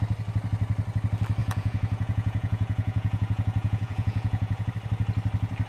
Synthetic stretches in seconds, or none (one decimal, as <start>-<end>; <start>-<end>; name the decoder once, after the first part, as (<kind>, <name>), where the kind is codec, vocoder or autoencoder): 1.4-4.7 (vocoder, Vocos)